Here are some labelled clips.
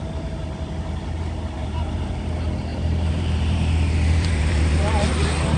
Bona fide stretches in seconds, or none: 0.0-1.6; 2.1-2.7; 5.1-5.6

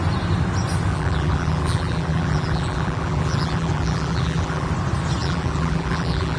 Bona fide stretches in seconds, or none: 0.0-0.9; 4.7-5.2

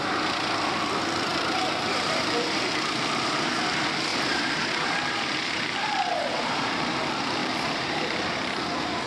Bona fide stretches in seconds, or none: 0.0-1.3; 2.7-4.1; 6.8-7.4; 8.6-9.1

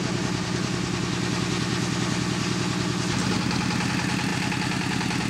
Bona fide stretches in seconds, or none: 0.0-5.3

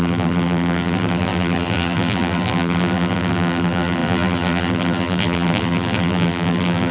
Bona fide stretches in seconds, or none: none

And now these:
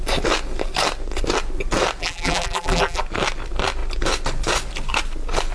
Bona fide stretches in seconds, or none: 0.0-2.0; 3.0-5.5

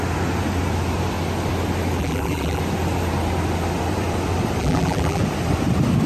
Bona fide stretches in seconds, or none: 0.0-2.0; 2.6-4.6; 5.2-6.1

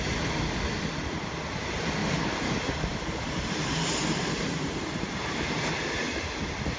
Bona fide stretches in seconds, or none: 0.0-2.0; 5.7-6.8